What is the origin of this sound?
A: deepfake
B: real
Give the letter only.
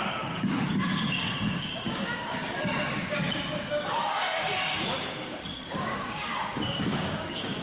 A